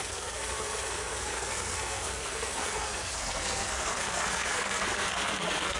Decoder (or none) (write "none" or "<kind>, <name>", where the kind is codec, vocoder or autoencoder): codec, SNAC